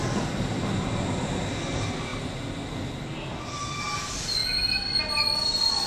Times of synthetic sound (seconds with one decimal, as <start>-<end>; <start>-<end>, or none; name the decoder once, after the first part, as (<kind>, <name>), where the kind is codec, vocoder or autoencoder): none